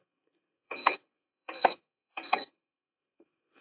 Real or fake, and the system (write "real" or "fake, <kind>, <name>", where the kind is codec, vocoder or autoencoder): fake, codec, SNAC